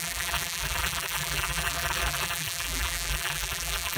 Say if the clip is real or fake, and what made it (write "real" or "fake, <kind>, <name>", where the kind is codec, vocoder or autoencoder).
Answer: fake, vocoder, BigVGAN v2